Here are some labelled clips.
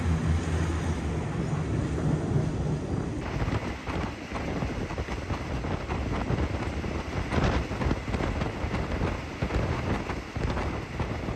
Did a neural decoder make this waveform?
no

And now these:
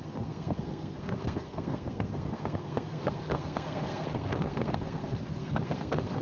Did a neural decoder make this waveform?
yes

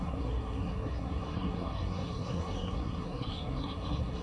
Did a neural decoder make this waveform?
yes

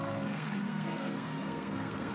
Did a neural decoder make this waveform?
yes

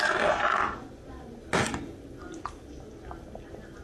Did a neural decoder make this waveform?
no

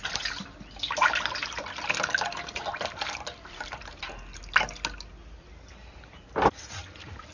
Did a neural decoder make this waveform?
no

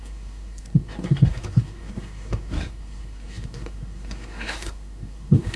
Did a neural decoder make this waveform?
yes